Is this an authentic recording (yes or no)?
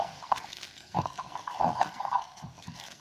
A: no